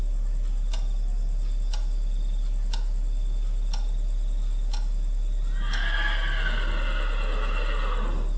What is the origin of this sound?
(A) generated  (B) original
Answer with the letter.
B